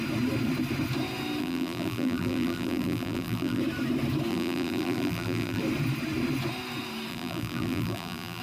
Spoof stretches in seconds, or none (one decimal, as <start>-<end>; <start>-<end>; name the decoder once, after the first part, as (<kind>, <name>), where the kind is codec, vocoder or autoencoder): 1.4-3.6 (vocoder, BigVGAN v2); 4.3-5.6; 7.1-8.4